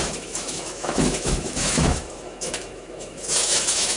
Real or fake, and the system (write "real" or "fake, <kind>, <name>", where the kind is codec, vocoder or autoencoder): fake, autoencoder, DAC-VAE